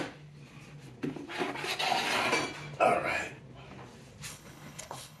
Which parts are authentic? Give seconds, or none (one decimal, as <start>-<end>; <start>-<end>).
0.0-4.3